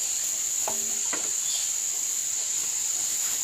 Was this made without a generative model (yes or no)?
yes